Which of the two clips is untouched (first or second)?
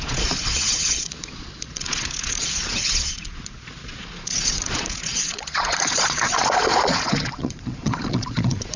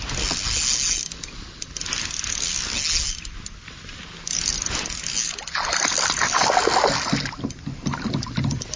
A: second